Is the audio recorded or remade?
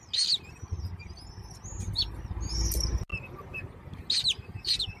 recorded